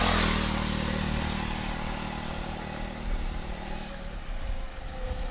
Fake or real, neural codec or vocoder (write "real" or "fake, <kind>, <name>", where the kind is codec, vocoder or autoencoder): real